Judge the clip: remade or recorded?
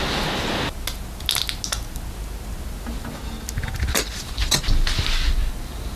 recorded